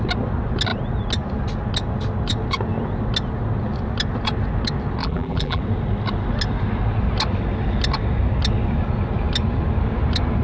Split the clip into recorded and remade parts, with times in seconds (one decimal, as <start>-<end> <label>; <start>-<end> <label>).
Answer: 0.0-5.0 recorded; 5.0-5.6 remade; 5.6-10.4 recorded